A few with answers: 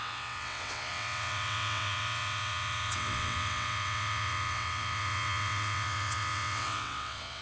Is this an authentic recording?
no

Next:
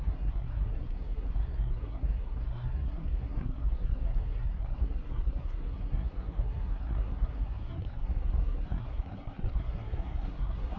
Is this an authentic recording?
no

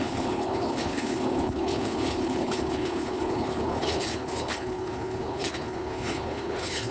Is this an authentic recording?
no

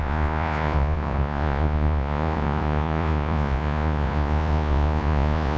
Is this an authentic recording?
no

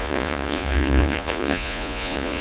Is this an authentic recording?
no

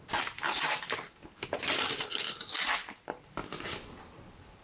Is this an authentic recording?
yes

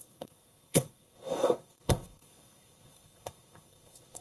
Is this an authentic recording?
no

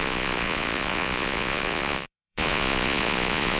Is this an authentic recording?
no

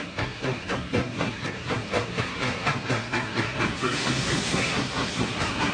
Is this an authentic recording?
no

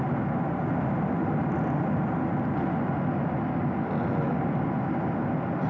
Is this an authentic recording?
yes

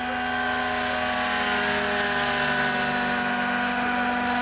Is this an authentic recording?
yes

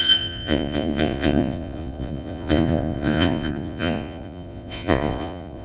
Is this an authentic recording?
no